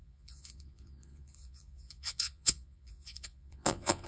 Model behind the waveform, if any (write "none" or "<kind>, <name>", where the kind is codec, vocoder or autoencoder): vocoder, Vocos